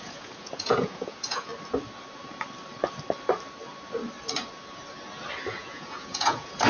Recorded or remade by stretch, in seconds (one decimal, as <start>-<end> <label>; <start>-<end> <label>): 0.0-1.5 remade; 1.5-5.5 recorded; 5.5-6.7 remade